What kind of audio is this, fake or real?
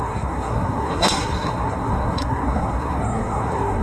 fake